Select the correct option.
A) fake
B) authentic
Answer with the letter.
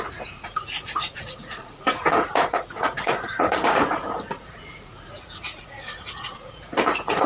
A